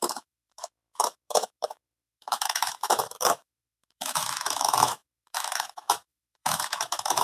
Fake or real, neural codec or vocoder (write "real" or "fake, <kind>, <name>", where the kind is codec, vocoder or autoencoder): fake, autoencoder, DAC-VAE